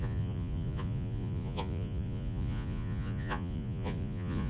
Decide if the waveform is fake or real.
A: fake